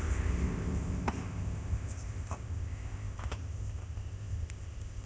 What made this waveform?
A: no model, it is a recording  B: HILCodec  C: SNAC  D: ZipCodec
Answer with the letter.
D